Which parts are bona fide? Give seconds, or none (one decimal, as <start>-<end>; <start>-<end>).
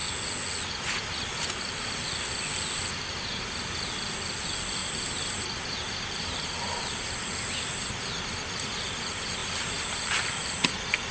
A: 0.0-4.8; 7.3-11.1